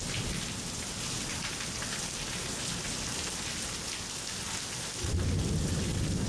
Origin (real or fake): real